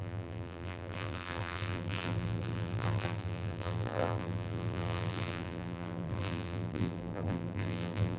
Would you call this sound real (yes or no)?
no